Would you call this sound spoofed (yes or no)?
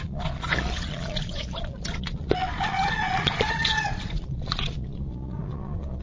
yes